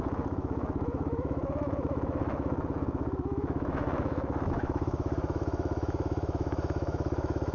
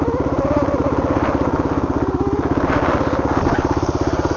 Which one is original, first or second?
second